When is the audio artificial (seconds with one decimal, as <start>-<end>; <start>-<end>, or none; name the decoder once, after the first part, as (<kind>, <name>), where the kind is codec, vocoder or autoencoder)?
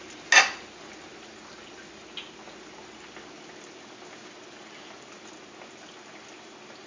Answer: none